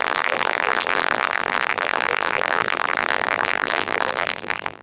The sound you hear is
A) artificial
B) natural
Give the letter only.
A